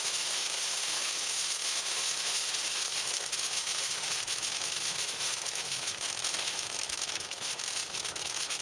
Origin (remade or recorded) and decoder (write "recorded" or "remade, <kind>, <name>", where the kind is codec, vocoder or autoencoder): remade, autoencoder, DAC-VAE